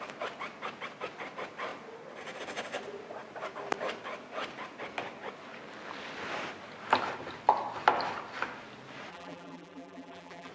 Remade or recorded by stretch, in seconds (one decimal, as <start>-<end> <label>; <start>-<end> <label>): 0.0-9.1 recorded; 9.1-10.5 remade